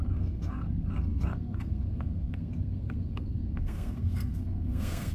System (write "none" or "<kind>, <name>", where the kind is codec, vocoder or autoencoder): codec, SNAC